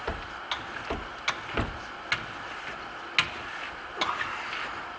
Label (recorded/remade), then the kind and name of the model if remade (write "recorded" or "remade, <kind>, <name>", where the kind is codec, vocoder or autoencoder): recorded